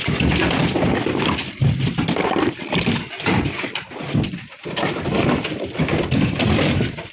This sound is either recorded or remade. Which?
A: remade